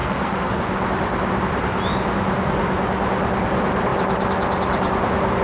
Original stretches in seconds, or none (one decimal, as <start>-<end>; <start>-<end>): 0.6-5.4